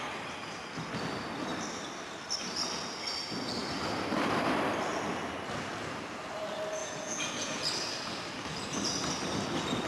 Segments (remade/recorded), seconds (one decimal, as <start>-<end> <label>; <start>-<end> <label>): 0.0-6.8 recorded; 6.8-7.7 remade; 7.7-9.9 recorded